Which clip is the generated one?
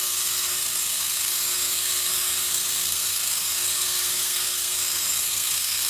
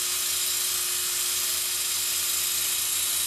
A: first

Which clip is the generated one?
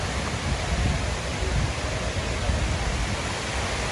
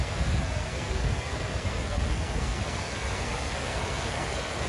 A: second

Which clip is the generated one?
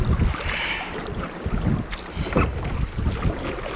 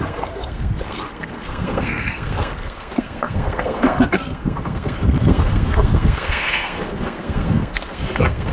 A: second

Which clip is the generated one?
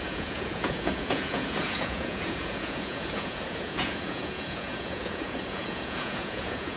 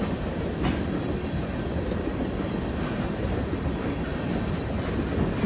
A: first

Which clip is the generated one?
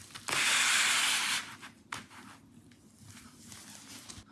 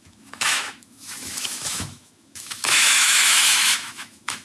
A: second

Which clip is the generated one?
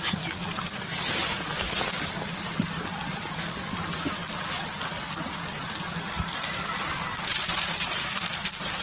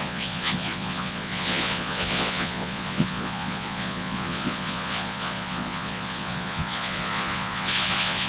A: second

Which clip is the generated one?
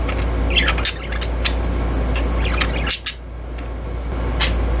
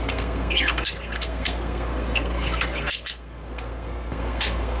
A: second